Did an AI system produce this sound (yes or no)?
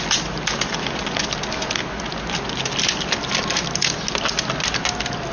no